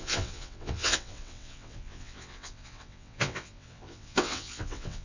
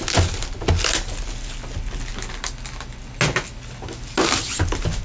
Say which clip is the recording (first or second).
second